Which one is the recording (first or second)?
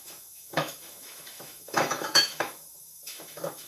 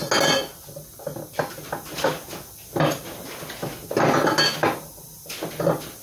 second